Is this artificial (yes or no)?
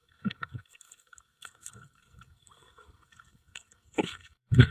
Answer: yes